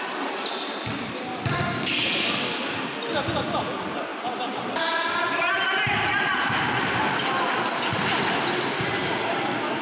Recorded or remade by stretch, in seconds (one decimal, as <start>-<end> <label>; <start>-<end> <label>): 0.0-9.8 recorded